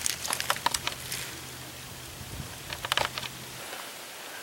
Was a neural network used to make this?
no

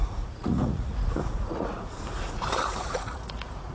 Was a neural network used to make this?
yes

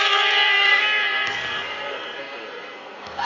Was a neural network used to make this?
yes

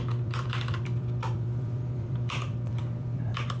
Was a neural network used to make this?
yes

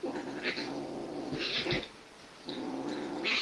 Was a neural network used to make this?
yes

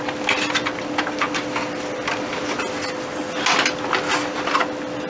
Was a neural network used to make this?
no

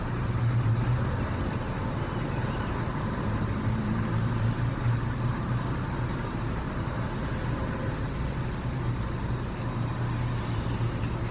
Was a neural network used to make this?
yes